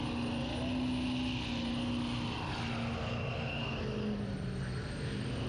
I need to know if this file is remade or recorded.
recorded